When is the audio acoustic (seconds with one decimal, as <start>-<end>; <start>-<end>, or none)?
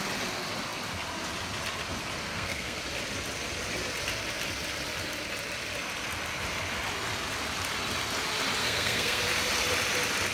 0.0-2.3; 2.8-8.6; 9.2-10.3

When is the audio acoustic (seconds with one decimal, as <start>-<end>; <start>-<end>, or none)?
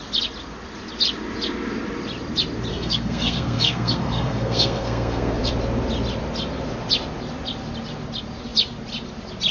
0.0-2.7; 5.5-9.5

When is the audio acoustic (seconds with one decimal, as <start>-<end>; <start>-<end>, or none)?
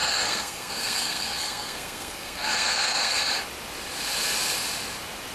3.2-5.3